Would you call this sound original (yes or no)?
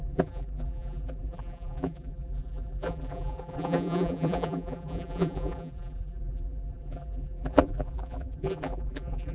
no